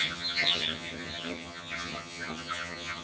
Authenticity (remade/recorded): remade